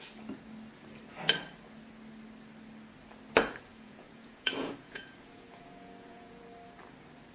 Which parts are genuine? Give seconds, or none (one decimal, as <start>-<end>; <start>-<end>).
0.0-3.7; 6.4-7.3

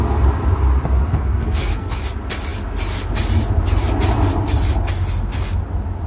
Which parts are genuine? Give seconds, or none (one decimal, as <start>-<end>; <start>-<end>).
0.0-1.1; 2.0-6.1

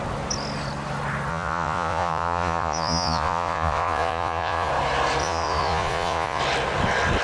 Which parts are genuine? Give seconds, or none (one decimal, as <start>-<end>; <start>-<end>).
0.0-1.3; 4.7-5.2; 6.4-7.2

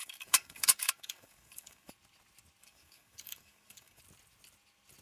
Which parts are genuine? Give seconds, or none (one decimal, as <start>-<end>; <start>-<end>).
1.9-2.6; 4.0-5.0

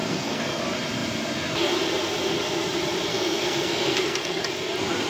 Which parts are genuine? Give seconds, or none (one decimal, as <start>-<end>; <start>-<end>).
0.6-3.1; 4.4-5.1

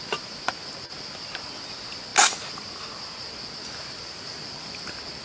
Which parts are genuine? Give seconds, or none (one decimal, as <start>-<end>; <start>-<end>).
0.0-5.2